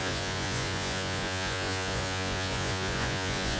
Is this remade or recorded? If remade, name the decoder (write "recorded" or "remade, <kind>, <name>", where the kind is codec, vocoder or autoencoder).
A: remade, vocoder, Vocos